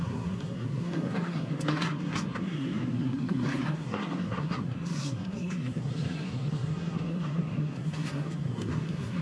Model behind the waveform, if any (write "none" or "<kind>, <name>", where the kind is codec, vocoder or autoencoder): codec, SNAC